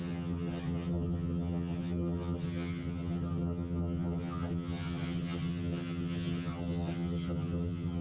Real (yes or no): no